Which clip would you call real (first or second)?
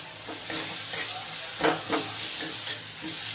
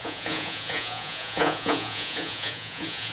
first